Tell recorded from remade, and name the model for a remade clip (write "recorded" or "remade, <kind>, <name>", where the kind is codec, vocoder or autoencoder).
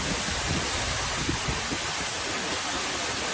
recorded